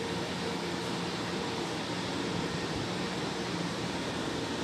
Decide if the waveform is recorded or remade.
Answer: remade